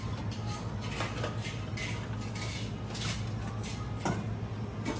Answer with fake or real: real